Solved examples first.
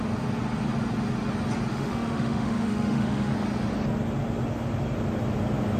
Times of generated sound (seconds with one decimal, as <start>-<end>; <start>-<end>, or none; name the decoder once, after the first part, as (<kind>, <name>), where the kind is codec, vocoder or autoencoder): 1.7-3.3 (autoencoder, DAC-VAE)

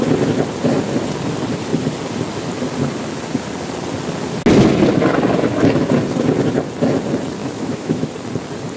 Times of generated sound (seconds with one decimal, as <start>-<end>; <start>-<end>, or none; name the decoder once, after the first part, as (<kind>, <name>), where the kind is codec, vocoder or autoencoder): 7.4-8.1 (autoencoder, DAC-VAE)

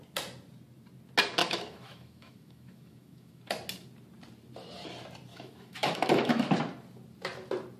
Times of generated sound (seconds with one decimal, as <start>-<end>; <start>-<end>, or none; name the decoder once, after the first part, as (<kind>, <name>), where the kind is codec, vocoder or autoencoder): 1.4-3.4 (autoencoder, DAC-VAE); 5.3-6.5